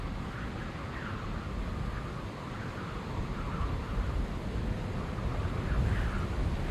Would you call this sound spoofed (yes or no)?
no